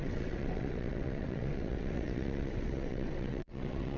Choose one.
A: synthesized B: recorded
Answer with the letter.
A